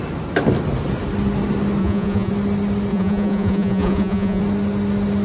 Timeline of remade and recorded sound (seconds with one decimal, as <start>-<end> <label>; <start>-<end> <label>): 0.0-1.8 recorded; 1.8-2.3 remade; 2.3-2.9 recorded; 2.9-4.4 remade; 4.4-5.2 recorded